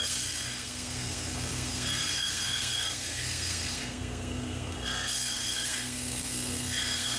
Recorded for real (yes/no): no